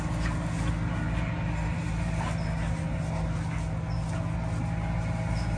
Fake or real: real